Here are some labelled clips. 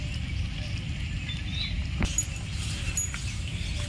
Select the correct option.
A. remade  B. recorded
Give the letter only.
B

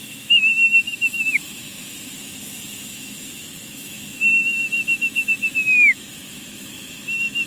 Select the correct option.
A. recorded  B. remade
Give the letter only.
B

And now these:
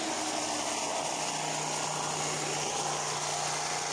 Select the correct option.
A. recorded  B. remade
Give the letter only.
A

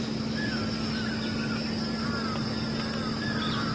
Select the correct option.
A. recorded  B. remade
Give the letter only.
A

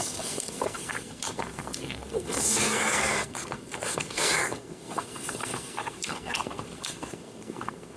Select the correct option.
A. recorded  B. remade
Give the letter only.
B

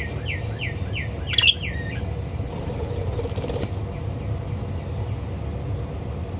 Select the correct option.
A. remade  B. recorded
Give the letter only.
B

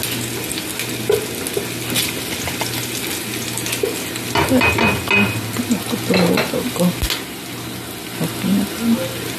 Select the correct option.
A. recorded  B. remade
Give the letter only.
A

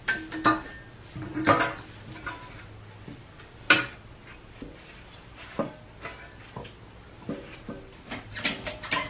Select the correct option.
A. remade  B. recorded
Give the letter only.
B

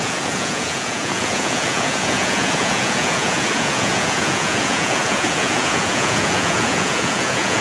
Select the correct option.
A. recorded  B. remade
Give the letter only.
B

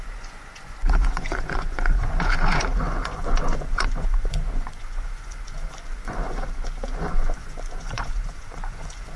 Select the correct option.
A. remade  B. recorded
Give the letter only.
A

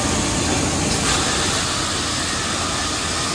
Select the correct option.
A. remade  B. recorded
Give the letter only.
B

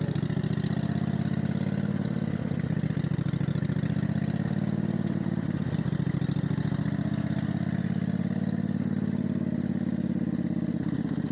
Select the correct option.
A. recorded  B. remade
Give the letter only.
A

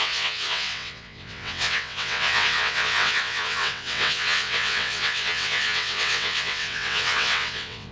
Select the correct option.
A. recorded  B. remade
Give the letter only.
B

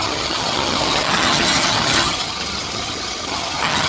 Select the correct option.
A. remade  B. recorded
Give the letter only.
A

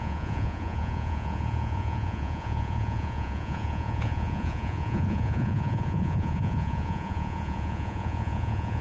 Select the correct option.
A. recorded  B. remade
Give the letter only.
B